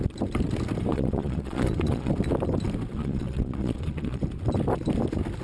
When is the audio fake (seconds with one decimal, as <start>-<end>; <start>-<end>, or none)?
0.9-2.1; 2.9-4.2

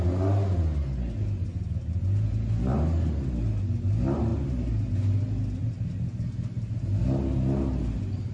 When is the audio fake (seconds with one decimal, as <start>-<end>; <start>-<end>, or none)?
none

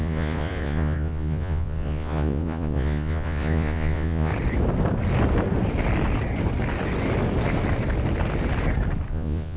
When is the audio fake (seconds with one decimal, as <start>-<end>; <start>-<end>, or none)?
0.0-4.3; 9.1-9.6

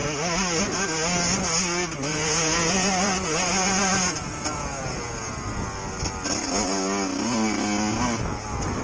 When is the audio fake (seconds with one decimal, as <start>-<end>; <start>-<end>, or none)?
2.1-5.3

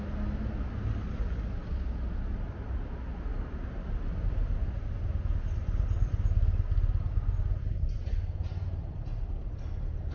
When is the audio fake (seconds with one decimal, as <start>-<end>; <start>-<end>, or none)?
none

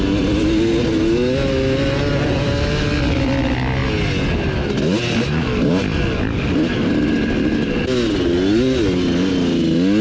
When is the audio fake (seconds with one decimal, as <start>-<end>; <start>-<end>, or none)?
none